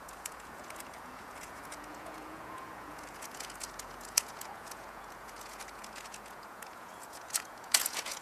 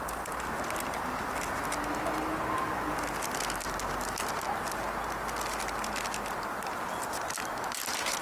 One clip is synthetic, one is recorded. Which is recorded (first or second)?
second